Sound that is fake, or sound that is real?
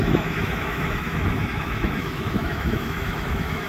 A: fake